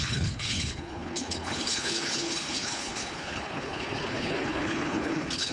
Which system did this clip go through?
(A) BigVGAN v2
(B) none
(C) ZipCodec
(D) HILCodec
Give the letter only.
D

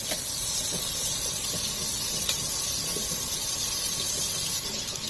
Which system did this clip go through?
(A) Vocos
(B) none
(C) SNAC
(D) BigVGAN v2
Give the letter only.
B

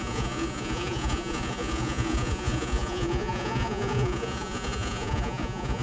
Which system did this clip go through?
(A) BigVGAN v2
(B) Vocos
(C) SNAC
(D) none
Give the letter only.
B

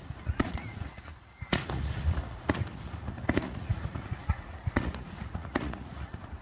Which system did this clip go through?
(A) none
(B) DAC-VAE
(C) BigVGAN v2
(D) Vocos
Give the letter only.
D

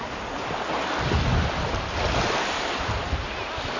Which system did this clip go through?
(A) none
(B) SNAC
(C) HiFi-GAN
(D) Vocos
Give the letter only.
A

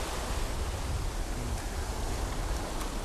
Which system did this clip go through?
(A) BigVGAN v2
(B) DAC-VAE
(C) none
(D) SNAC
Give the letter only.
C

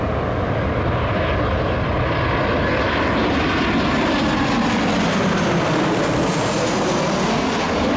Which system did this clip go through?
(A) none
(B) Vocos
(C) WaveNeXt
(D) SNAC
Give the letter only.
A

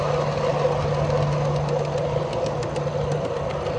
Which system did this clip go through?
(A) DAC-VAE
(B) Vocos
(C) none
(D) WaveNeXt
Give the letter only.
C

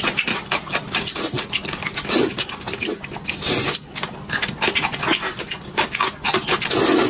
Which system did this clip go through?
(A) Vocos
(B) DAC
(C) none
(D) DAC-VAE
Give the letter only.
C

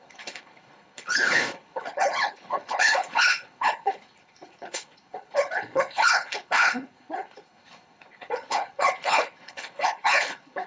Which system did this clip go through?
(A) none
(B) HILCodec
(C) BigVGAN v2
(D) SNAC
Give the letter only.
B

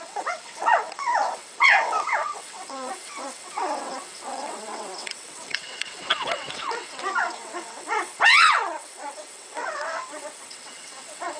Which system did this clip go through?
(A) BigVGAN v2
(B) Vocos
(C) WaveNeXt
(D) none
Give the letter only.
C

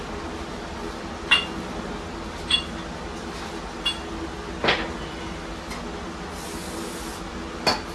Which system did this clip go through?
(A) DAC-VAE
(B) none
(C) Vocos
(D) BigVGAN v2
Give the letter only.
B